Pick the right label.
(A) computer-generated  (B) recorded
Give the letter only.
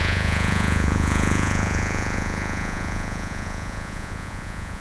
A